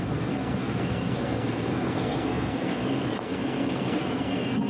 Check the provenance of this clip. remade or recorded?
remade